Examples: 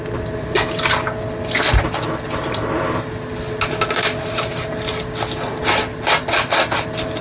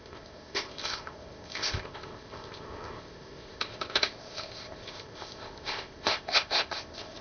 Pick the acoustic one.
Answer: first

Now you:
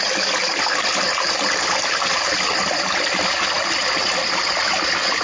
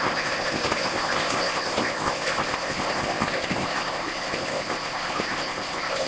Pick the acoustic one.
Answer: first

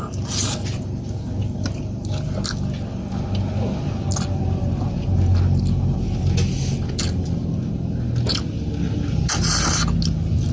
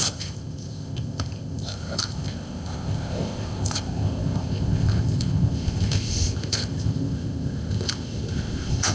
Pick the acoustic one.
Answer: first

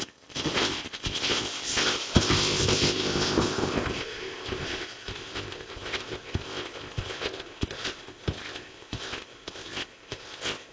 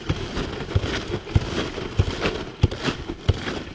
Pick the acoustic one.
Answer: second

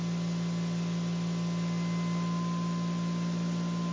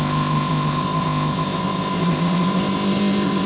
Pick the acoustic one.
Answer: first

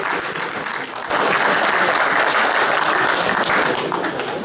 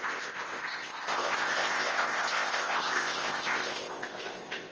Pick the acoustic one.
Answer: first